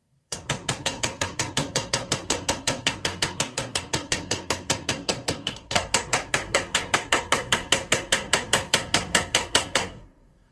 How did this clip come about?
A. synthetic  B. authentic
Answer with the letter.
A